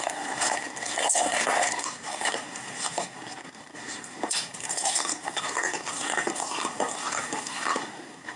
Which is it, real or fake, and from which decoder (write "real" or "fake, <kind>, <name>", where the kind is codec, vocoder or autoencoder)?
fake, codec, SNAC